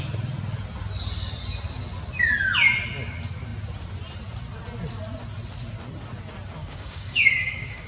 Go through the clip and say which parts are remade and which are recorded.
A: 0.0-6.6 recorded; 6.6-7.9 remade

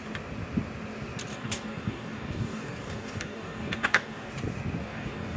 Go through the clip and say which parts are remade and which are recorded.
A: 0.0-1.3 recorded; 1.3-4.3 remade; 4.3-4.8 recorded; 4.8-5.4 remade

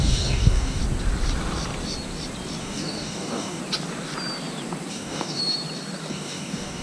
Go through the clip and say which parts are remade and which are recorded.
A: 0.0-0.8 remade; 0.8-2.6 recorded; 2.6-3.6 remade; 3.6-4.9 recorded; 4.9-5.4 remade; 5.4-6.1 recorded; 6.1-6.8 remade

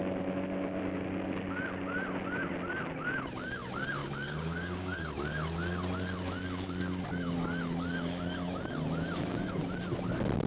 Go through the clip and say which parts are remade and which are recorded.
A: 0.0-4.0 recorded; 4.0-5.1 remade; 5.1-10.5 recorded

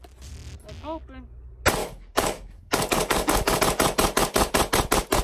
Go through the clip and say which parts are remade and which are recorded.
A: 0.0-1.8 recorded; 1.8-3.6 remade; 3.6-5.2 recorded

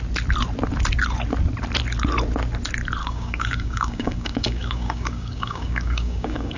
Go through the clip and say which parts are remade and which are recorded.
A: 0.0-3.0 recorded; 3.0-6.6 remade